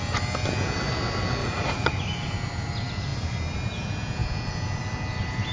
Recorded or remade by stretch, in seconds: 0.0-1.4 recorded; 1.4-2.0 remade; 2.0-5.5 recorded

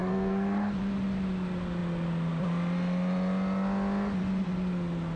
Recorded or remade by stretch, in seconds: 0.0-0.7 remade; 0.7-5.2 recorded

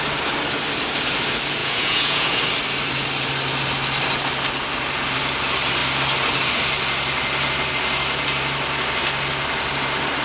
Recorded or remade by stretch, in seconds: 0.0-1.6 recorded; 1.6-2.4 remade; 2.4-10.2 recorded

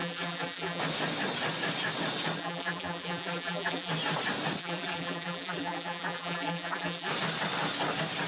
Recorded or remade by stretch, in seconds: 0.0-0.8 remade; 0.8-2.4 recorded; 2.4-3.9 remade; 3.9-4.6 recorded; 4.6-7.1 remade; 7.1-8.3 recorded

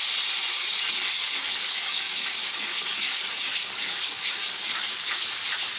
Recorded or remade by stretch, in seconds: 0.0-0.5 recorded; 0.5-3.2 remade; 3.2-3.6 recorded; 3.6-5.1 remade; 5.1-5.8 recorded

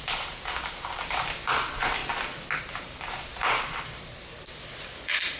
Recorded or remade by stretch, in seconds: 0.0-2.0 remade; 2.0-2.6 recorded; 2.6-5.4 remade

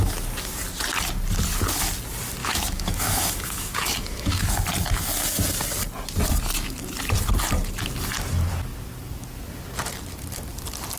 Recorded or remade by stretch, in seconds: 0.0-2.4 recorded; 2.4-4.5 remade; 4.5-11.0 recorded